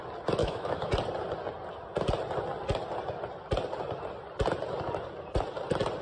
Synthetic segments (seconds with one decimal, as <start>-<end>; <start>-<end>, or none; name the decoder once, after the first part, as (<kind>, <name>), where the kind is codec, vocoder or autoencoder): 0.4-0.9 (autoencoder, DAC-VAE)